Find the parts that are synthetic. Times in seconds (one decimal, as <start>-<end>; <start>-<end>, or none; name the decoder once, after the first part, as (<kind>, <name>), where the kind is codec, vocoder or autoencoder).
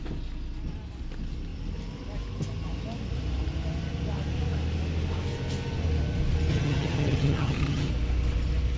6.5-7.9 (vocoder, HiFi-GAN)